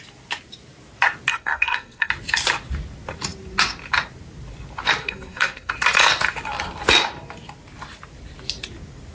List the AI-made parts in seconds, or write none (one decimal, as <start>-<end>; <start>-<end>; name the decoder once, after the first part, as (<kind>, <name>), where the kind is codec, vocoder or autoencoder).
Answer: 1.3-2.1 (codec, SNAC); 5.0-5.7